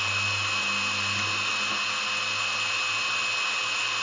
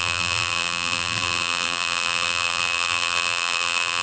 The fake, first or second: second